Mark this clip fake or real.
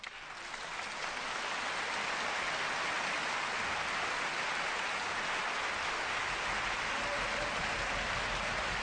real